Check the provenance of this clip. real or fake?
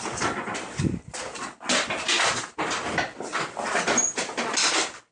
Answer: real